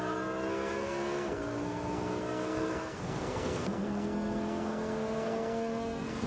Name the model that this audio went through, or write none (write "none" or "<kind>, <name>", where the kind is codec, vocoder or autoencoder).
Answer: codec, SNAC